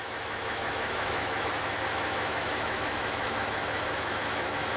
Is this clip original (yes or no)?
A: no